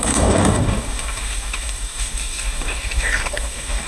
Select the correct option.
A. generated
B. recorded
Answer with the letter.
A